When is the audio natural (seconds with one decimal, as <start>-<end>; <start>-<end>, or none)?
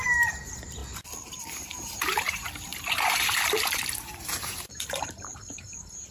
0.8-1.4